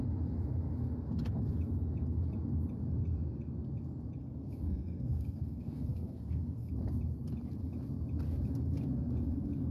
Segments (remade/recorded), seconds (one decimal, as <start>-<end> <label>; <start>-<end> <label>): 0.0-4.2 recorded; 4.2-6.7 remade; 6.7-9.7 recorded